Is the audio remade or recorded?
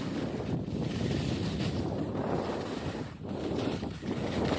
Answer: recorded